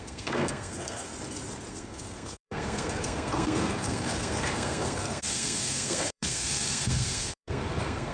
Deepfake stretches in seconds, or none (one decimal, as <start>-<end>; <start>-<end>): 0.0-1.1; 1.7-8.1